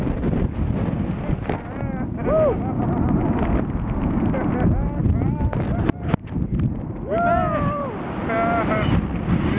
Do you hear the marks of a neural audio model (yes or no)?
no